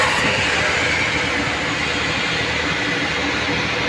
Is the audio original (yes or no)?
yes